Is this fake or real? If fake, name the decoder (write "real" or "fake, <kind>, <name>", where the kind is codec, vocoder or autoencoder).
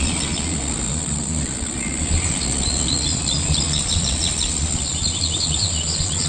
fake, vocoder, Vocos